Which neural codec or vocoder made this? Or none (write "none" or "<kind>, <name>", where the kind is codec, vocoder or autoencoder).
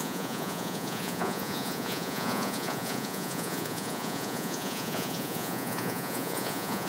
vocoder, Vocos